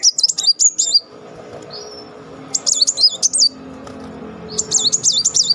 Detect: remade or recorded recorded